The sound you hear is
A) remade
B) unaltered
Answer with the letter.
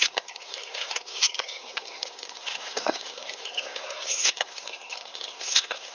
A